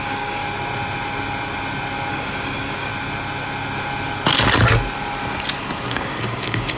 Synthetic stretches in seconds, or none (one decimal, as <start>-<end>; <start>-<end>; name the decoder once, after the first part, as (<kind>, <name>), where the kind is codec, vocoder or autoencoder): 0.0-0.4 (codec, DAC); 2.1-2.9; 5.9-6.8

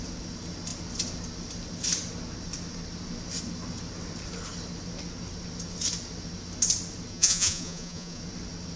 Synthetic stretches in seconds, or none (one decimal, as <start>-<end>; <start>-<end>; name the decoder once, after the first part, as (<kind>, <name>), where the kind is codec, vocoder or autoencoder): 7.1-8.2 (vocoder, Vocos)

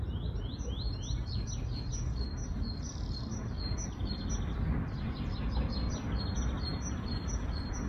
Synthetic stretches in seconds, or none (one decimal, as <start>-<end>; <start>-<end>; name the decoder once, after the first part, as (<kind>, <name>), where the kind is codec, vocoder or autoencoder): none